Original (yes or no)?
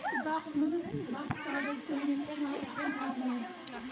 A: no